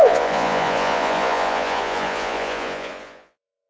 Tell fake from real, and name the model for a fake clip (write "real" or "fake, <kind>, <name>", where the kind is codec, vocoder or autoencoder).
fake, vocoder, Vocos